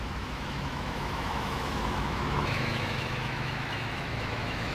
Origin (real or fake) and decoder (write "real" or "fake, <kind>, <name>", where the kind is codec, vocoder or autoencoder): fake, autoencoder, DAC-VAE